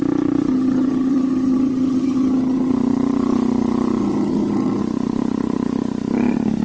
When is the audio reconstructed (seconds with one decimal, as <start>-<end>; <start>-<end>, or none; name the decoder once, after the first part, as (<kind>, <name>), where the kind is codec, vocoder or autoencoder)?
0.5-2.7 (vocoder, HiFi-GAN); 4.0-4.8